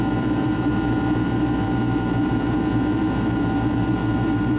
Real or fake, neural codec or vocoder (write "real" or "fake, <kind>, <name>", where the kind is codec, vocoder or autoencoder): fake, vocoder, BigVGAN v2